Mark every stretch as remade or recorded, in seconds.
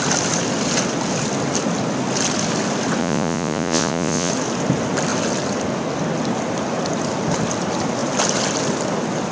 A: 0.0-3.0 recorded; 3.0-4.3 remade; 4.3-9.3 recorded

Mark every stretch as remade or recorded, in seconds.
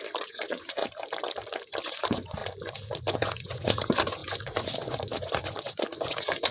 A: 0.0-0.8 remade; 0.8-1.9 recorded; 1.9-2.4 remade; 2.4-2.9 recorded; 2.9-6.5 remade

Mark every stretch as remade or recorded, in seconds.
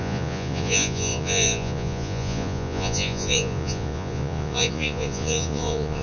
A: 0.0-6.0 remade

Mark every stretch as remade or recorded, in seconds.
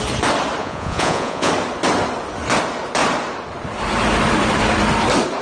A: 0.0-0.6 recorded; 0.6-1.5 remade; 1.5-5.4 recorded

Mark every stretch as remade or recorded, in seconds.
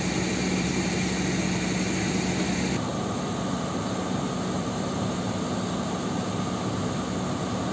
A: 0.0-7.7 recorded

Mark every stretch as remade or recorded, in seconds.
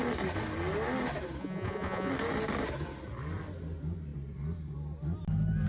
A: 0.0-1.4 recorded; 1.4-2.1 remade; 2.1-5.7 recorded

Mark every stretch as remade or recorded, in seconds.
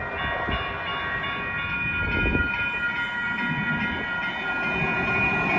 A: 0.0-5.6 recorded